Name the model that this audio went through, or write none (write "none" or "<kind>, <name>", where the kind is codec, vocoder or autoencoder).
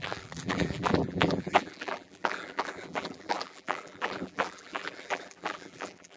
vocoder, BigVGAN v2